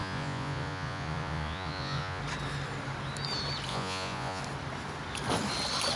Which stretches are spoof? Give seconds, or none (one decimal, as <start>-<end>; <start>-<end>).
0.0-2.2; 3.7-4.4